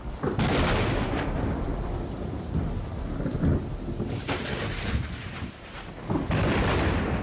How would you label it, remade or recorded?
remade